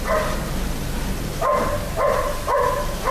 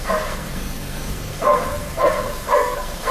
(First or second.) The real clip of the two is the first